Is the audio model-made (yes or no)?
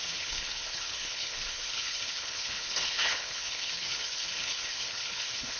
yes